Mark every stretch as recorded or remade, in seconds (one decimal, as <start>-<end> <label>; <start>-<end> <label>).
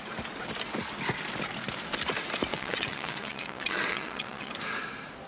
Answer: 0.0-2.5 recorded; 2.5-4.5 remade; 4.5-5.3 recorded